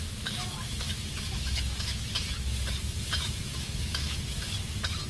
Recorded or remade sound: remade